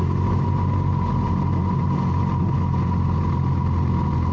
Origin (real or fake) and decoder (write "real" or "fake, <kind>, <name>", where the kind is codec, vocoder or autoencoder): real